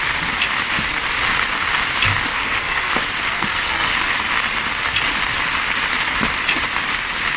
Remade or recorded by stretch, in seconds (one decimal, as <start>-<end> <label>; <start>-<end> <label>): 0.0-2.3 recorded; 2.3-2.9 remade; 2.9-3.3 recorded; 3.3-3.9 remade; 3.9-7.4 recorded